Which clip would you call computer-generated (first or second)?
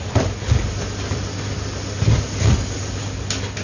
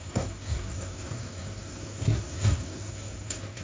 second